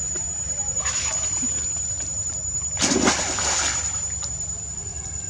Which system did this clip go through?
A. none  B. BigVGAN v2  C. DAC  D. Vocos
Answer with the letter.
A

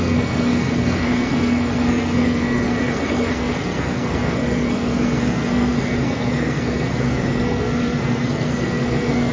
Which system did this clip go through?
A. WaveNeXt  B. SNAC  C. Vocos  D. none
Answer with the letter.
B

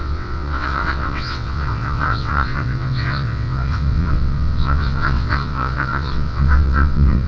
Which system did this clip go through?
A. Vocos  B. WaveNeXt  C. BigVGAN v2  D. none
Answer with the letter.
B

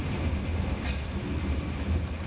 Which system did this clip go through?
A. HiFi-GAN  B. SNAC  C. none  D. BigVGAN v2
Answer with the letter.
C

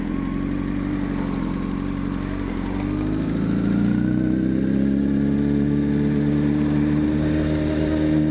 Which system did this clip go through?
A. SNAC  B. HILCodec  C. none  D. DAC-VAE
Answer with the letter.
C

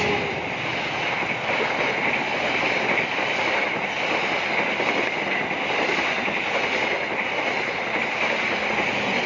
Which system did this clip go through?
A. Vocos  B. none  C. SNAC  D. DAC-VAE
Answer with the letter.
B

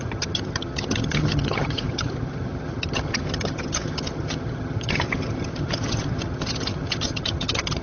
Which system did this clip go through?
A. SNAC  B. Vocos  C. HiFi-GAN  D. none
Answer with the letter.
C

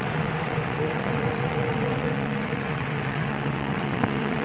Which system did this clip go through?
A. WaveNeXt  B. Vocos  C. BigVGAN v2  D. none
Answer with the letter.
A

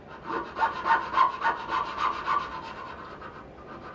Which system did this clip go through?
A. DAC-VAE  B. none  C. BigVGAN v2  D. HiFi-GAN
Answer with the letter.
B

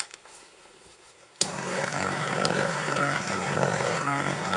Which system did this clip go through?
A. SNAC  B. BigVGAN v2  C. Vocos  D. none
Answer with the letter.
A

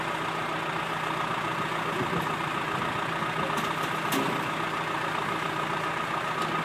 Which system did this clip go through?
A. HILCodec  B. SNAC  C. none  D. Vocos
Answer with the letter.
C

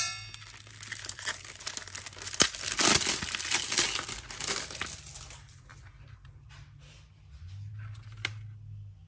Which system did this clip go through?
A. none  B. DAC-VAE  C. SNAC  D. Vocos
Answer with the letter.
A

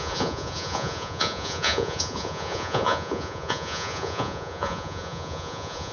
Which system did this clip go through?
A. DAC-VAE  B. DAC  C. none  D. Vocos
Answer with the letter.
D